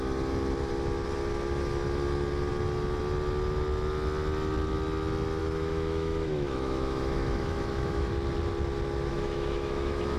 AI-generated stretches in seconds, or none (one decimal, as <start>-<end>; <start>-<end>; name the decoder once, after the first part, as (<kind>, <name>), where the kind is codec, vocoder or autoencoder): 5.4-8.1 (autoencoder, DAC-VAE); 9.1-10.2